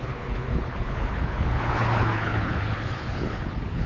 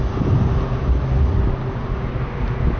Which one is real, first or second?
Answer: second